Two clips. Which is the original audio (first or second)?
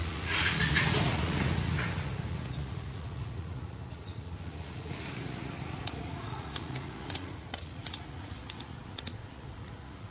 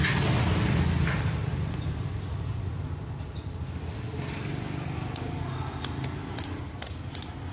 second